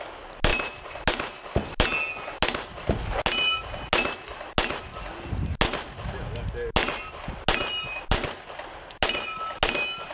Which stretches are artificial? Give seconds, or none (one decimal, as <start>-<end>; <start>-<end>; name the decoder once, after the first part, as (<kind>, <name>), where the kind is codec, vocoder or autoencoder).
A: none